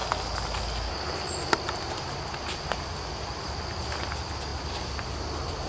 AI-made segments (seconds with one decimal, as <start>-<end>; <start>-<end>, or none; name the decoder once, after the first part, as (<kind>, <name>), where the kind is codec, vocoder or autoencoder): 3.4-5.7 (vocoder, BigVGAN v2)